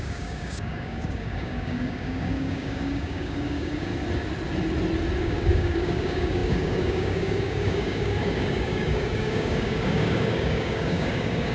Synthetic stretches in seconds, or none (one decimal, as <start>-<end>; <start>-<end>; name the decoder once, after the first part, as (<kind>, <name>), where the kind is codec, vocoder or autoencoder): 0.0-3.9 (codec, DAC); 5.2-11.5

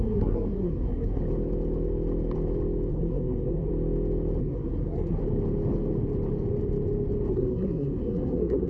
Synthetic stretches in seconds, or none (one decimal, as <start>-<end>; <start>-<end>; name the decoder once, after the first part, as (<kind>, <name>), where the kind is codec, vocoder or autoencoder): 0.0-1.2 (codec, SNAC); 2.9-3.7; 4.4-5.2; 7.3-8.7